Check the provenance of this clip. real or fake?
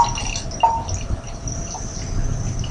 real